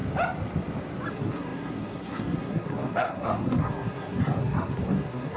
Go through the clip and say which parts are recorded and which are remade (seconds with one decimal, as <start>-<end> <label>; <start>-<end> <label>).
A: 0.0-1.1 recorded; 1.1-5.4 remade